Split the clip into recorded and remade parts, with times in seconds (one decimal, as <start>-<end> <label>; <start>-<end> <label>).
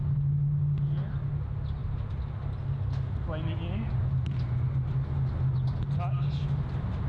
0.0-7.1 recorded